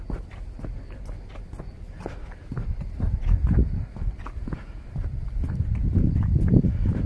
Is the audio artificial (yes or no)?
no